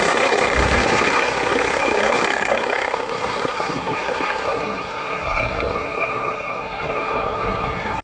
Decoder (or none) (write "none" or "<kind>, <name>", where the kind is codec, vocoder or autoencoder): codec, SNAC